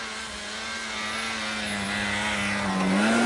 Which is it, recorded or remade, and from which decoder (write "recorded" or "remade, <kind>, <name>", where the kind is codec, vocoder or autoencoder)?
recorded